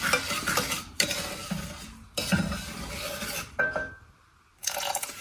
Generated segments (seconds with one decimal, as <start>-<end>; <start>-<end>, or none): 4.6-5.2